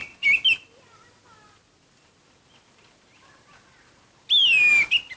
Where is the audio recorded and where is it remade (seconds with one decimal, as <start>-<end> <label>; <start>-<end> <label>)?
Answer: 0.0-5.2 recorded